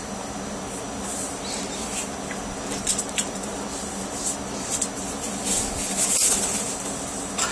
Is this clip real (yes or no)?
yes